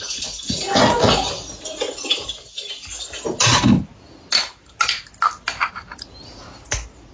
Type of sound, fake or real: real